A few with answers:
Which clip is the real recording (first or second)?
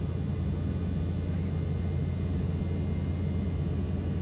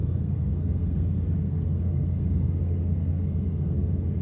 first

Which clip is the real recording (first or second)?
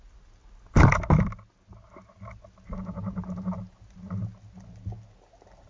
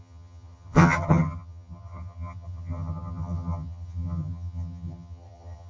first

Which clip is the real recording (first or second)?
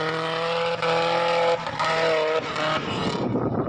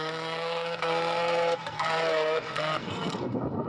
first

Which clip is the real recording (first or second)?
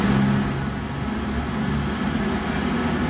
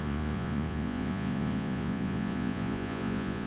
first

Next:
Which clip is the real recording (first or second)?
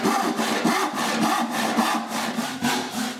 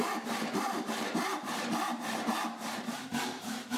first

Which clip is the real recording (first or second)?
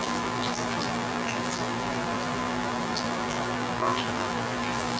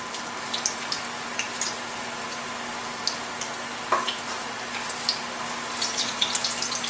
second